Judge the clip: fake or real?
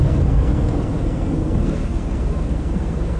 fake